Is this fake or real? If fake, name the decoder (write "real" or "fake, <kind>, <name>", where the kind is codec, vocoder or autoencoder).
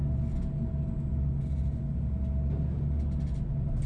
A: real